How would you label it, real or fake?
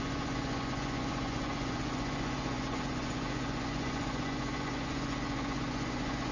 fake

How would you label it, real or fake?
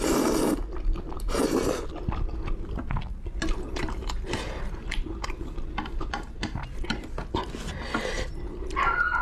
real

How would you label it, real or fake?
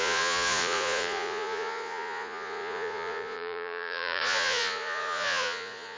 fake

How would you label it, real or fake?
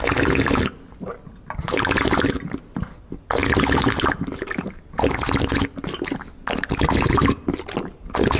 real